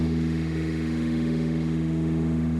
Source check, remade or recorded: remade